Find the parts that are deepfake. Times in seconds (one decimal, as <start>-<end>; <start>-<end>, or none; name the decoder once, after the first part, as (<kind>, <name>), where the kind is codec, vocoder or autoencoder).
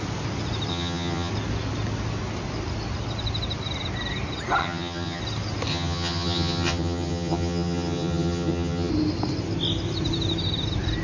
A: 0.7-1.3 (vocoder, HiFi-GAN); 4.6-5.2; 5.7-8.9